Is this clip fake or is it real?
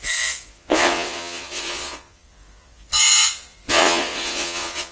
fake